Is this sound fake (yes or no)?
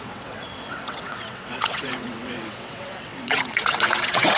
yes